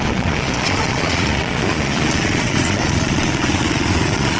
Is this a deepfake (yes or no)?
yes